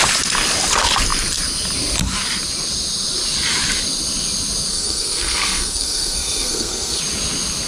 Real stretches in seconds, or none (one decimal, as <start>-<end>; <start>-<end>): 0.0-4.7; 7.0-7.7